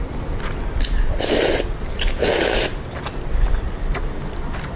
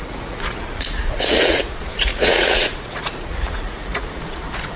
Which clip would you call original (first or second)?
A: first